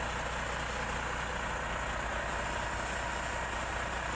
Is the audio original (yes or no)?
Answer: yes